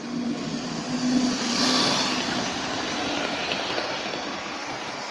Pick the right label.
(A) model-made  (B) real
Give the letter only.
B